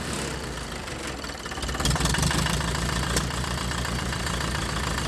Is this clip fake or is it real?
fake